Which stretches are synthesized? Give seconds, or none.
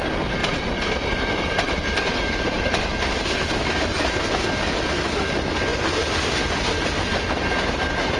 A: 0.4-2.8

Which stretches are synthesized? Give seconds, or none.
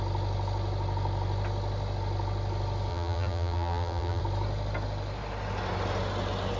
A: 2.9-4.2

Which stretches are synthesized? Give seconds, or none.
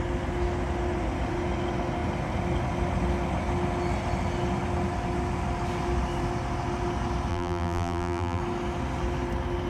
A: 7.3-8.4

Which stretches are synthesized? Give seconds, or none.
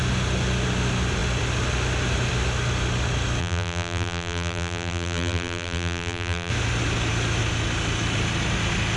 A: 3.4-6.5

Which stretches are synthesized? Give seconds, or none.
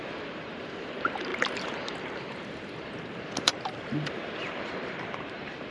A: 0.0-5.7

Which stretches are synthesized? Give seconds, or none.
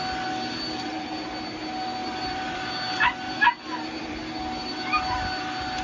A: 2.0-2.7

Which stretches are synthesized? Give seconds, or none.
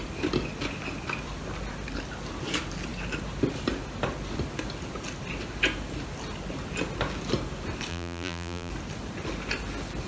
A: 7.9-8.7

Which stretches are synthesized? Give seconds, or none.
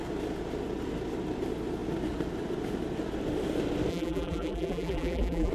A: 3.9-5.5